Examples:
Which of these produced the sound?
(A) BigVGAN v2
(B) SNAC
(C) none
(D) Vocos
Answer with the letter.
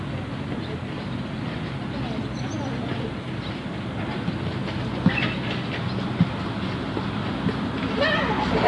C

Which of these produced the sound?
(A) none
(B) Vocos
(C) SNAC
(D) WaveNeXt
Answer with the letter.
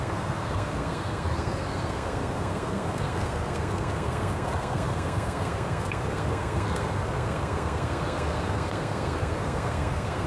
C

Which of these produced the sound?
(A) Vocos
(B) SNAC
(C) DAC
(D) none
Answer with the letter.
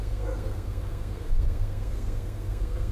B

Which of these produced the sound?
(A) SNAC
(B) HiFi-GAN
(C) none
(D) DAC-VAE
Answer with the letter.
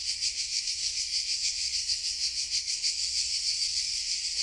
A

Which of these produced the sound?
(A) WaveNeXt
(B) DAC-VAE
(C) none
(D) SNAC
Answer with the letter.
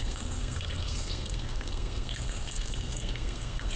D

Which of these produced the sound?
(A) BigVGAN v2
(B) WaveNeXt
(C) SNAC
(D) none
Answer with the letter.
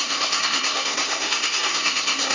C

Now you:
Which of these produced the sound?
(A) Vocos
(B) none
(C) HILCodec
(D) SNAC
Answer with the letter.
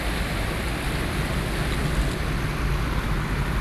B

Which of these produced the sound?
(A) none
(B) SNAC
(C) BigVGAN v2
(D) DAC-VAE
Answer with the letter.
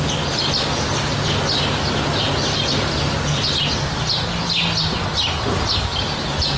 A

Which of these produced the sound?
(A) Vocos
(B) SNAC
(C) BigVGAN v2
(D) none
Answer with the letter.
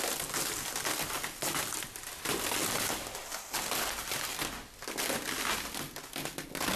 D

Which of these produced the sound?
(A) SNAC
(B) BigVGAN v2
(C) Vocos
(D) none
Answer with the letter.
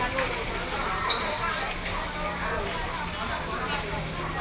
D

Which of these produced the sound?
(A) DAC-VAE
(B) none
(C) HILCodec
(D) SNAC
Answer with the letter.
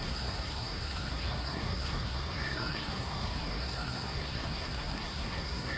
D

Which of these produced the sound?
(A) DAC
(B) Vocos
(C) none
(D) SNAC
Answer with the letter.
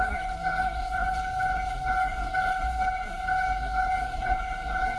D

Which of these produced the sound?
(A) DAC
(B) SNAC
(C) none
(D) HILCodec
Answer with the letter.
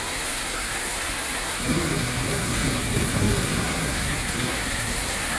B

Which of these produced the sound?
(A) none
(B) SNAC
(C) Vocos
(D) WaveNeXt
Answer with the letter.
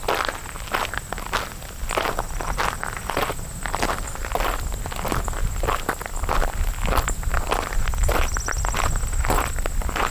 A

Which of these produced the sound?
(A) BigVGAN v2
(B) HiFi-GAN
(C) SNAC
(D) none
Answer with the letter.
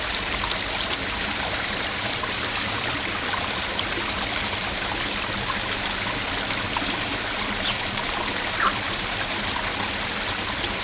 D